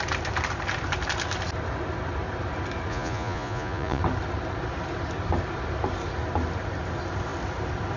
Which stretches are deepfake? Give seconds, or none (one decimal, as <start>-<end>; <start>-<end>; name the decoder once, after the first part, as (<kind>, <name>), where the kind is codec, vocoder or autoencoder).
2.9-4.0 (vocoder, Vocos)

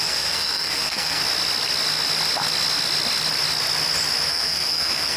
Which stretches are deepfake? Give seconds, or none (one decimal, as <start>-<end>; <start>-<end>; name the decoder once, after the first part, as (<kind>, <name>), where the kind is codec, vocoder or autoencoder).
0.0-1.2 (codec, SNAC); 4.3-5.2

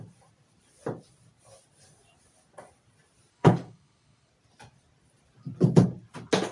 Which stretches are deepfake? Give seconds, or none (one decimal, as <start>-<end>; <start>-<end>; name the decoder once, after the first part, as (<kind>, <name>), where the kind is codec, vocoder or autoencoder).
3.3-4.3 (codec, HILCodec)

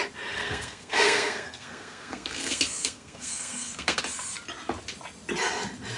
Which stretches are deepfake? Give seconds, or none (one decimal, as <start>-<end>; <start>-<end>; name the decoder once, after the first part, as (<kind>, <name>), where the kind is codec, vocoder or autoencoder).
0.4-4.0 (codec, SNAC)